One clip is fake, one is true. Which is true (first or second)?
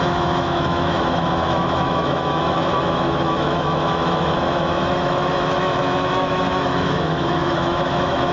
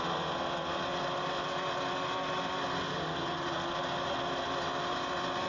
second